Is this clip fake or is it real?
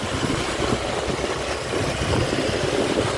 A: real